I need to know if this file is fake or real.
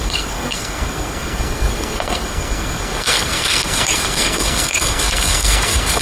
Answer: fake